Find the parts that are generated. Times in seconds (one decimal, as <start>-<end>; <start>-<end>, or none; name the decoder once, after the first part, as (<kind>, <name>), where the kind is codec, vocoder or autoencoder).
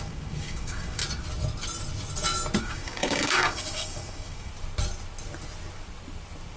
0.0-1.0 (codec, DAC); 2.6-4.5